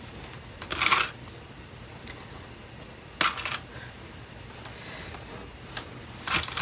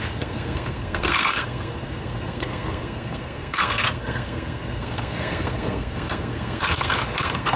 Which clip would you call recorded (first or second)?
first